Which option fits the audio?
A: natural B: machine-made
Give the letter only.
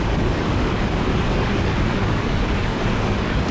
B